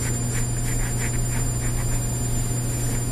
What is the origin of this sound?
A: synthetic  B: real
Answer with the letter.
B